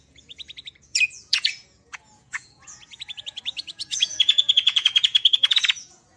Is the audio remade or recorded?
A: remade